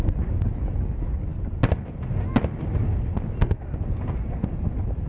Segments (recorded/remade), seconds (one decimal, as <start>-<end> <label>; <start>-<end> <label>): 0.0-5.1 recorded